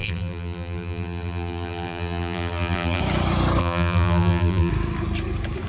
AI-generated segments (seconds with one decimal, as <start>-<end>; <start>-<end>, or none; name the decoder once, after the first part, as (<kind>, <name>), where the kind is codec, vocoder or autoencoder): 0.0-3.0 (vocoder, BigVGAN v2); 3.6-4.7